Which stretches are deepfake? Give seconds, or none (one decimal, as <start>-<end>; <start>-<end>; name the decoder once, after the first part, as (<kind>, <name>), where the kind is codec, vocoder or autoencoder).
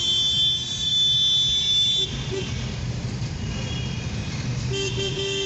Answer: none